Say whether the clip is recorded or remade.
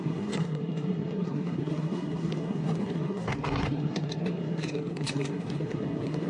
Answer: remade